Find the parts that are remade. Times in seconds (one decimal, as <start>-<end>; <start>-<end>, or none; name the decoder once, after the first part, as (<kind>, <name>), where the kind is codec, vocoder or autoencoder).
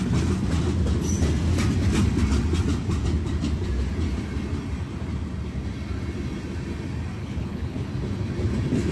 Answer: 7.2-7.9 (codec, HILCodec)